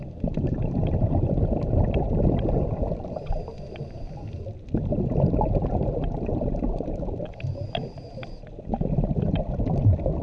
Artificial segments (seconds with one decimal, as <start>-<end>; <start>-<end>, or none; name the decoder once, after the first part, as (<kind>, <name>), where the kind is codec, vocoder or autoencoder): none